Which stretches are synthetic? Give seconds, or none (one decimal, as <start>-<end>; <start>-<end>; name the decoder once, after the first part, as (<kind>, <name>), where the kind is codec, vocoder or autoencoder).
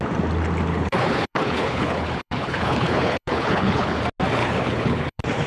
0.7-4.0 (codec, HILCodec); 4.4-5.5